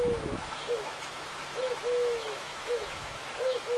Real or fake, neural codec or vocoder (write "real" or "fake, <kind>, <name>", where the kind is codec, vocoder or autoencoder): fake, autoencoder, DAC-VAE